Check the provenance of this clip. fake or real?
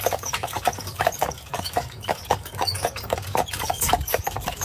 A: fake